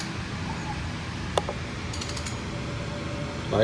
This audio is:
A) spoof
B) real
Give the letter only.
B